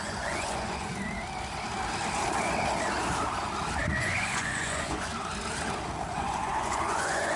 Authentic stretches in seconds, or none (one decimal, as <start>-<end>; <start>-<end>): 0.9-3.8; 5.1-6.1